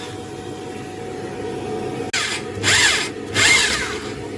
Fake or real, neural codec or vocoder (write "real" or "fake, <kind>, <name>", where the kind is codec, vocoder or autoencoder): real